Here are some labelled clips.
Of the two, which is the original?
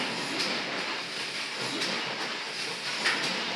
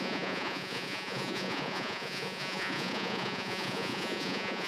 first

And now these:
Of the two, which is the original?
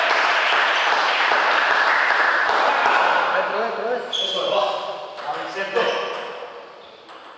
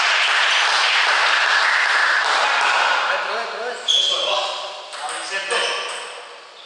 second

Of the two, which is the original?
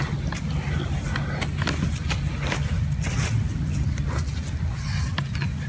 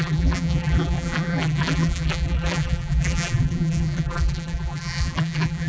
first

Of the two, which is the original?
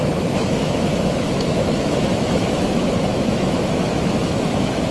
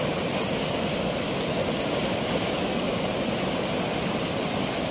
second